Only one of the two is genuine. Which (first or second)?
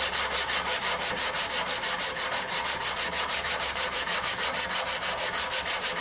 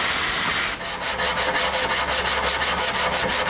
second